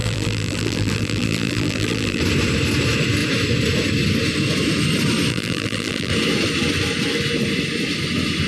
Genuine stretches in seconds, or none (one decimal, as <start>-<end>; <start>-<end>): 2.2-5.3; 6.1-8.5